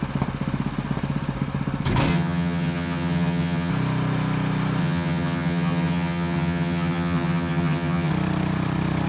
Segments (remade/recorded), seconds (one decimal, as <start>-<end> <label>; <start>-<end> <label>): 0.0-2.1 recorded; 2.1-3.7 remade; 3.7-4.8 recorded; 4.8-8.1 remade; 8.1-9.1 recorded